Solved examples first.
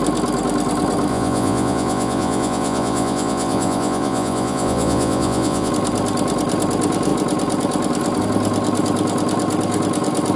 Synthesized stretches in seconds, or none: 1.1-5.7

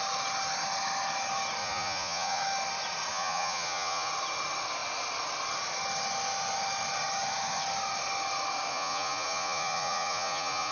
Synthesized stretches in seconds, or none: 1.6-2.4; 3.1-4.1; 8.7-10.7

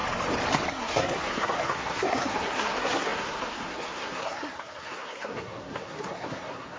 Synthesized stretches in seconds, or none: 0.7-6.8

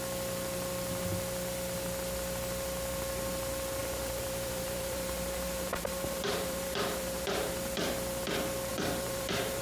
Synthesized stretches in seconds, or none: 3.8-7.5; 8.7-9.6